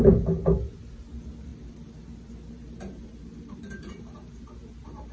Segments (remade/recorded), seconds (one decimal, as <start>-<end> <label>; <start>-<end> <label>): 0.0-5.1 recorded